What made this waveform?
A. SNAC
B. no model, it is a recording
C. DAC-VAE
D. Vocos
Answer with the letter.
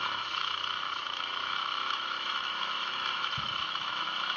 C